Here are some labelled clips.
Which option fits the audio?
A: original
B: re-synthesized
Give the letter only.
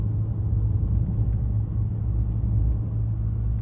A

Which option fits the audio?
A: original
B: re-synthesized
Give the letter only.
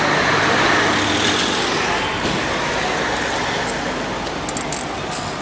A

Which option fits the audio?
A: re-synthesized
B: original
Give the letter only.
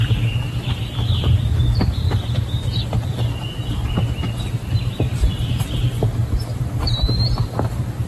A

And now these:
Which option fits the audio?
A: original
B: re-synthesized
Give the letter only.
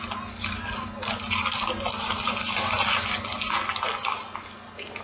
A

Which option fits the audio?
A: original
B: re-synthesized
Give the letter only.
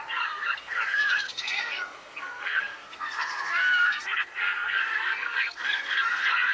B